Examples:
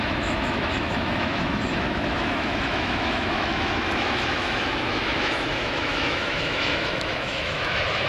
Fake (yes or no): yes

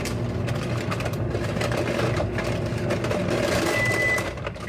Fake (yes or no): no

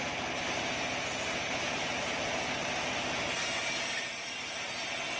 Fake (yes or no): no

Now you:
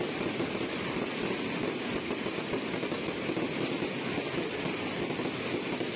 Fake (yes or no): no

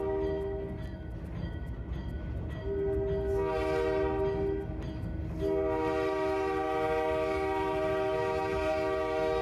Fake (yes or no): no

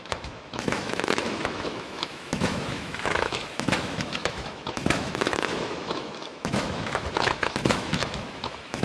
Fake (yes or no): yes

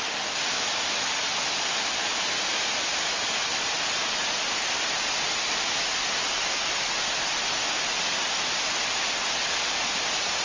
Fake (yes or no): no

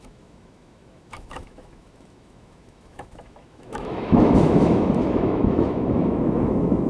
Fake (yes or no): yes